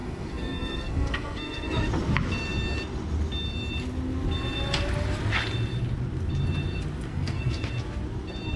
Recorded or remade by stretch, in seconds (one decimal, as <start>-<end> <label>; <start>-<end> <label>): 0.0-1.9 remade; 1.9-7.1 recorded; 7.1-7.7 remade; 7.7-8.6 recorded